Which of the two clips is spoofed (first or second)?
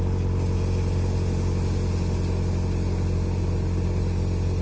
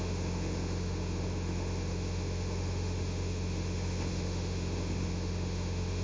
second